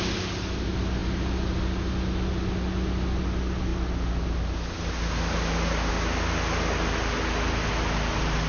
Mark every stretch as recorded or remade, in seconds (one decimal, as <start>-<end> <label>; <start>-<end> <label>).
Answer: 0.0-8.5 recorded

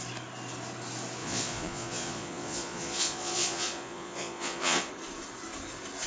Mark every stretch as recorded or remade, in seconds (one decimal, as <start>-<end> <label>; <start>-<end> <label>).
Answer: 0.0-1.2 recorded; 1.2-4.9 remade; 4.9-6.1 recorded

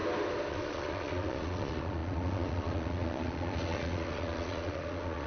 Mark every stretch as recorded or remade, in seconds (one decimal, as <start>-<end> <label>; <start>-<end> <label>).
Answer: 0.0-0.5 recorded; 0.5-5.3 remade

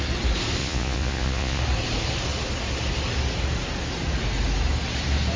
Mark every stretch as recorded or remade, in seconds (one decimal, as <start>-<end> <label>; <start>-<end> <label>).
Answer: 0.0-0.6 recorded; 0.6-1.6 remade; 1.6-5.4 recorded

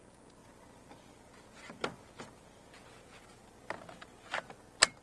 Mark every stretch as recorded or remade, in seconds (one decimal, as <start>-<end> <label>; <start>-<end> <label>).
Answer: 0.0-5.0 recorded

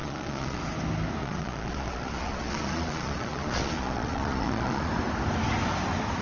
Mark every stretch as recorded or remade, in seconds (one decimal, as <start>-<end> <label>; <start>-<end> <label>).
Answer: 0.0-0.6 remade; 0.6-1.2 recorded; 1.2-4.9 remade; 4.9-6.2 recorded